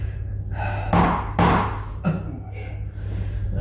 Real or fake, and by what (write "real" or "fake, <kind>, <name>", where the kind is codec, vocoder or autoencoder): real